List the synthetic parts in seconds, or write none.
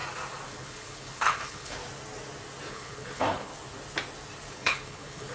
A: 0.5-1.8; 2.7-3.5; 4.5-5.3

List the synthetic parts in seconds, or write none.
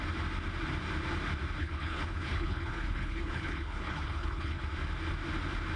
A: 1.6-4.6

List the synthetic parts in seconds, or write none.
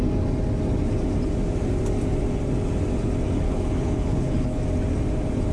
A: 3.4-4.6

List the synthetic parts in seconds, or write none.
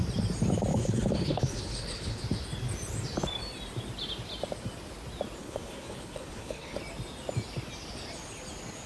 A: 0.7-2.2; 5.4-6.8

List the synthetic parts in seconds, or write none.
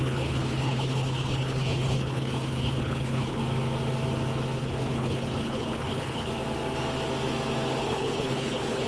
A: 0.0-3.4; 4.6-6.3; 7.8-8.9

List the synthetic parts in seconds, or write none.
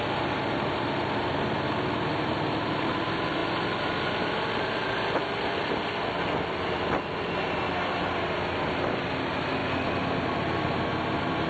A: none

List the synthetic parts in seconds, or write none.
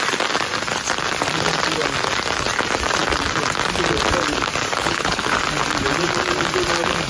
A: 4.8-5.4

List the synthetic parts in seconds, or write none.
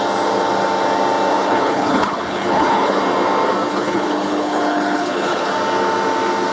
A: 1.3-3.0; 3.7-5.5